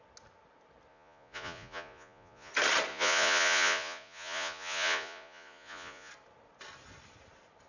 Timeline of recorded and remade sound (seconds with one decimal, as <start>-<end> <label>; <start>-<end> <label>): 0.0-0.9 recorded; 0.9-2.5 remade; 2.5-2.9 recorded; 2.9-6.1 remade; 6.1-7.7 recorded

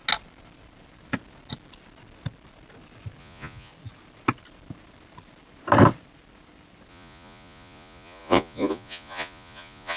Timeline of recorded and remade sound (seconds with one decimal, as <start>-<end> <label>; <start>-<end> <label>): 0.0-3.2 recorded; 3.2-3.7 remade; 3.7-6.9 recorded; 6.9-10.0 remade